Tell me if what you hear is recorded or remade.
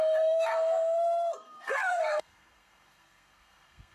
remade